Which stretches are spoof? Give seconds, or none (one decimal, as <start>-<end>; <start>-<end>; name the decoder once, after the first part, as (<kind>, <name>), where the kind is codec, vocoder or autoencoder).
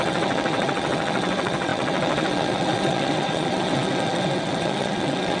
0.0-5.4 (vocoder, WaveNeXt)